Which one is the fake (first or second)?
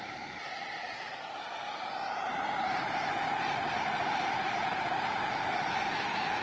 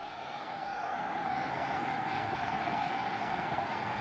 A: second